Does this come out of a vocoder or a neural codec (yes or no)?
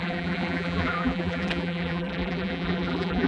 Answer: yes